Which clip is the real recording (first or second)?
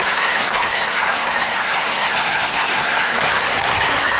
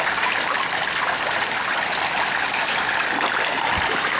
second